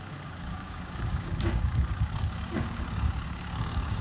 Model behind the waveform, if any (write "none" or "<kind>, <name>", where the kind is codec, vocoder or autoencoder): codec, DAC